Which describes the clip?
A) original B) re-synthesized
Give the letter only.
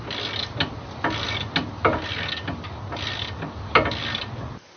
A